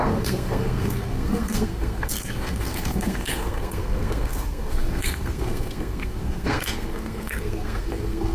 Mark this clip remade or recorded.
remade